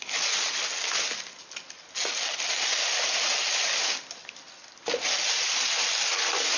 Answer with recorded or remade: recorded